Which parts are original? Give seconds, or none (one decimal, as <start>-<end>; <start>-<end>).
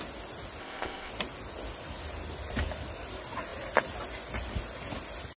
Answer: 0.0-0.6; 1.1-5.4